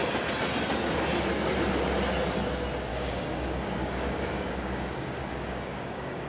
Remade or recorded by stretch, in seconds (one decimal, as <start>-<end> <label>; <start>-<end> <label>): 0.0-2.9 recorded; 2.9-6.3 remade